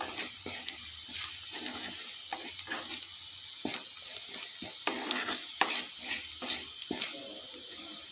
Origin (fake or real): real